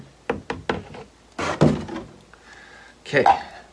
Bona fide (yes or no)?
yes